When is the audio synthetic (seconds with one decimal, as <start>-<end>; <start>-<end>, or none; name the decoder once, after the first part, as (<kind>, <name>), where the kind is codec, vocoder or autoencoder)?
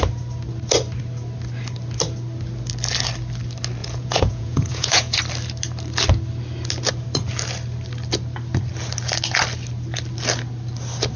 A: 3.8-5.2 (vocoder, Vocos)